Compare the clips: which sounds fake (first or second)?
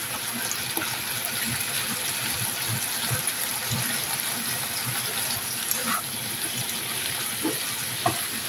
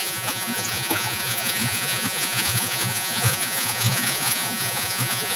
second